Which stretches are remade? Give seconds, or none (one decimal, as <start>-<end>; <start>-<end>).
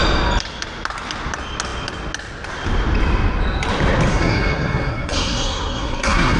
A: 4.1-6.4